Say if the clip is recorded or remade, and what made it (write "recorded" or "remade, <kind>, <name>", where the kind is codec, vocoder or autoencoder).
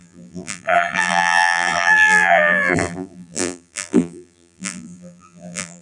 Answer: remade, vocoder, BigVGAN v2